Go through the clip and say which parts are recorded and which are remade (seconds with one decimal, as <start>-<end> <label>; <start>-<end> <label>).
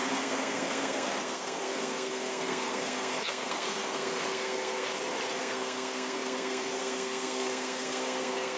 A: 0.0-4.9 remade; 4.9-5.4 recorded; 5.4-8.6 remade